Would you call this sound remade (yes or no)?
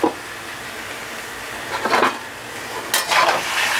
no